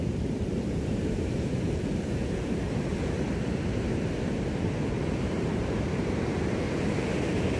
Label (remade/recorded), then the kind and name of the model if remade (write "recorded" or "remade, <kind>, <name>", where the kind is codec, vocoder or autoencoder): remade, vocoder, BigVGAN v2